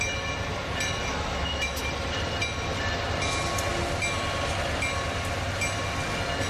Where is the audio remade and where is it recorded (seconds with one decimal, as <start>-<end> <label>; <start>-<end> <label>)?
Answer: 0.0-1.1 recorded; 1.1-1.8 remade; 1.8-6.5 recorded